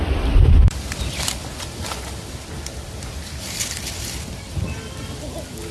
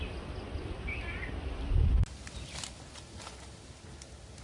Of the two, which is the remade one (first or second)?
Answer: first